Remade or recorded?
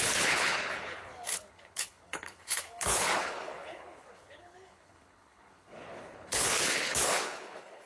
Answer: remade